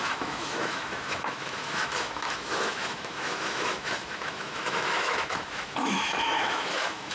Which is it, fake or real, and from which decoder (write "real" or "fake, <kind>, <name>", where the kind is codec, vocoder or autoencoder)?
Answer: fake, autoencoder, DAC-VAE